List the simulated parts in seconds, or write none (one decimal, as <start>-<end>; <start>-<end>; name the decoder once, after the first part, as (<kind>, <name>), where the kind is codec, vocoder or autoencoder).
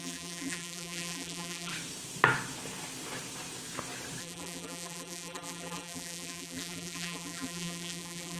0.0-1.7 (vocoder, BigVGAN v2); 4.2-8.4